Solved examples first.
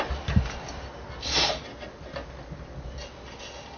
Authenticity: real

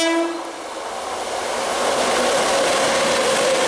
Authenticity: real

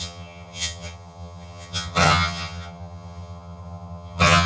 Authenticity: fake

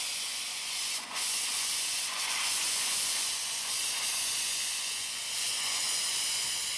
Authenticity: fake